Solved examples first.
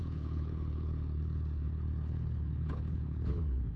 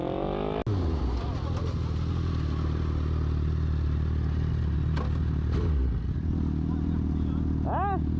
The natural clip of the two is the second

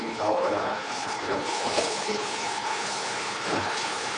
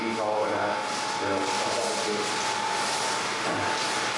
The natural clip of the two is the second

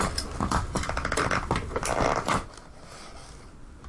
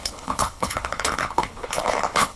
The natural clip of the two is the first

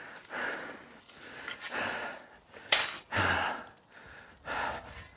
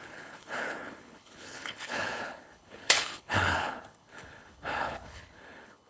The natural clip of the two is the first